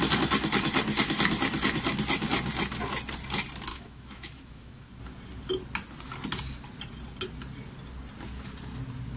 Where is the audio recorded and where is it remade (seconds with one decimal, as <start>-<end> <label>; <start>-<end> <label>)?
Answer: 0.0-3.7 recorded; 3.7-5.0 remade; 5.0-9.2 recorded